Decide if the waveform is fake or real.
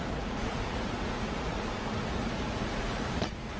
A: fake